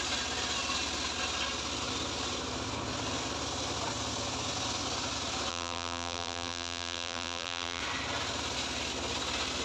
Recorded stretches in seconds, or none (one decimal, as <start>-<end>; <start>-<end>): 0.0-5.5; 7.8-9.6